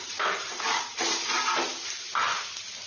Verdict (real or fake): real